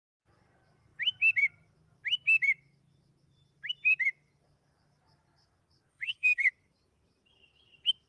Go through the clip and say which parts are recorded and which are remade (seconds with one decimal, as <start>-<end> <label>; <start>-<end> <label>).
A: 0.0-5.9 recorded; 5.9-6.5 remade; 6.5-8.1 recorded